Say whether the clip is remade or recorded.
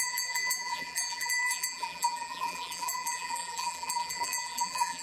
remade